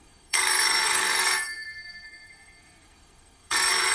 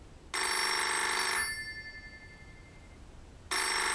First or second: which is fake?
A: first